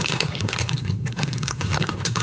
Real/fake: fake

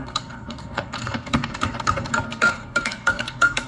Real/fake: fake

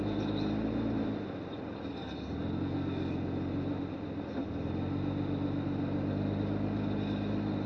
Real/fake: real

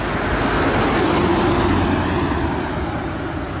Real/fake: real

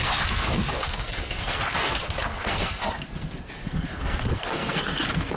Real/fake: fake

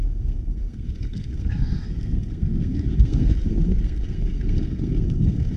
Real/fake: fake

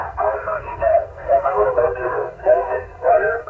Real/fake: fake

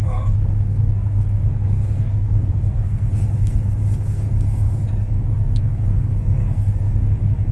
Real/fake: fake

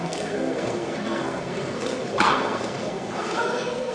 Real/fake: fake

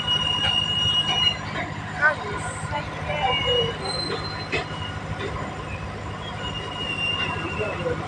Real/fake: real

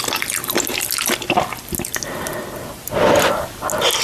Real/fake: real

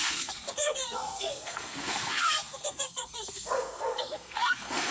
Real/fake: fake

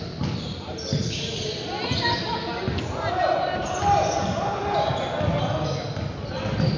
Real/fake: real